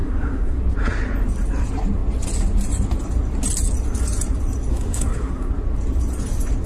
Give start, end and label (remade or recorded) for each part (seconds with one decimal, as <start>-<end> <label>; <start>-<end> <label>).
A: 0.0-0.6 remade; 0.6-4.7 recorded; 4.7-5.5 remade; 5.5-6.7 recorded